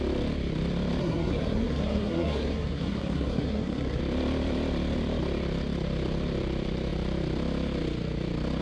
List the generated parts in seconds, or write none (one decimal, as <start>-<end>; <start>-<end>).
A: 1.0-4.0